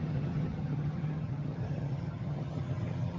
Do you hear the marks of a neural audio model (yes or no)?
yes